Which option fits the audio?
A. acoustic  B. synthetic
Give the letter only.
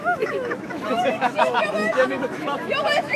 B